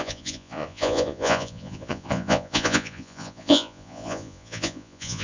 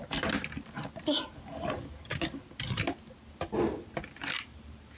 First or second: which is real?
second